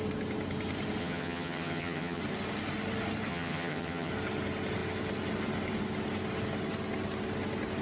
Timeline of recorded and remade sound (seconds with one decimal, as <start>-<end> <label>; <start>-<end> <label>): 0.0-1.0 recorded; 1.0-2.2 remade; 2.2-3.3 recorded; 3.3-4.1 remade; 4.1-7.8 recorded